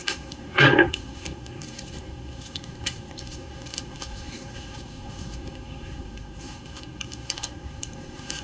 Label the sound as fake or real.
fake